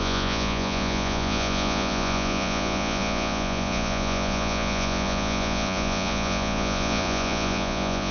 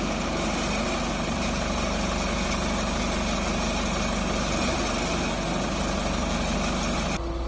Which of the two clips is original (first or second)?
second